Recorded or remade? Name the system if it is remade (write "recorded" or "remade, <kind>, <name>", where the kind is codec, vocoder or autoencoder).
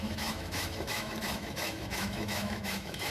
remade, autoencoder, DAC-VAE